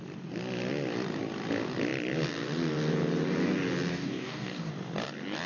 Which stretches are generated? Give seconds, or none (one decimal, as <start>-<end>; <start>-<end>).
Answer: 3.9-4.7